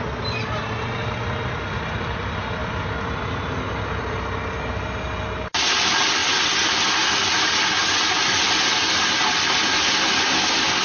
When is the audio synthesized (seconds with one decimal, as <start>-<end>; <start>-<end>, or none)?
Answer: none